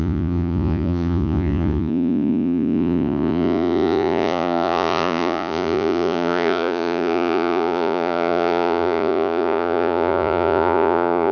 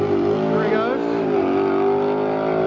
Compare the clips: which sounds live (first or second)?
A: second